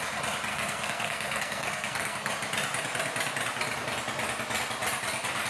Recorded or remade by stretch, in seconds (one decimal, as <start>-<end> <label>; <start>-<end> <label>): 0.0-0.5 recorded; 0.5-2.3 remade; 2.3-5.5 recorded